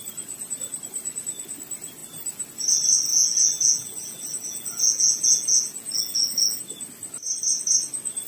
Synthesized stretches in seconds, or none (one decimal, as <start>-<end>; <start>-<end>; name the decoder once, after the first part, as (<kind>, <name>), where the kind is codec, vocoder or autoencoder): 3.1-6.6 (vocoder, Vocos)

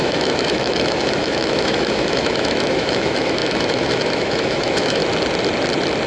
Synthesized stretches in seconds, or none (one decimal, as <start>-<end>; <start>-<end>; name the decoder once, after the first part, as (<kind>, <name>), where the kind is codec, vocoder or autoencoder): 0.0-5.0 (autoencoder, DAC-VAE)